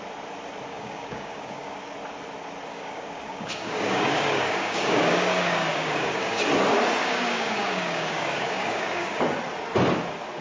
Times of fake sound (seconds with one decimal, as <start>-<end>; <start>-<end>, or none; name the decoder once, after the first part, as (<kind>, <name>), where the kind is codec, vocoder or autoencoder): 0.7-1.9 (codec, DAC); 2.7-6.4; 7.0-9.2